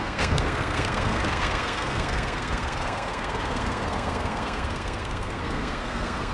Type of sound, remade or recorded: remade